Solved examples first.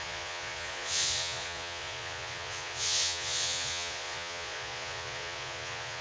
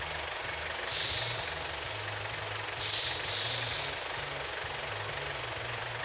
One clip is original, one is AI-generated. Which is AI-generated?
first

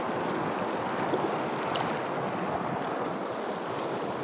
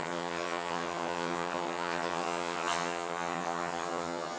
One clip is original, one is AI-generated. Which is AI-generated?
second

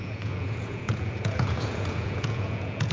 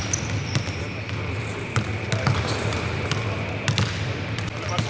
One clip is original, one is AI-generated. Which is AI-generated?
first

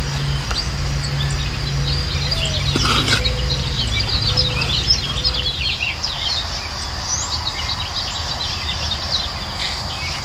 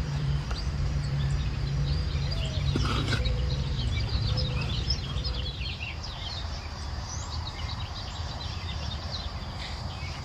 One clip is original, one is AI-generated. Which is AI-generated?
second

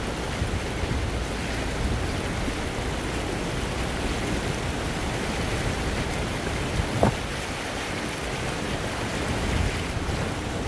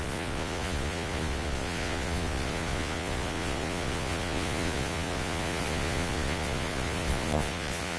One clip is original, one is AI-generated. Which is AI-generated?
second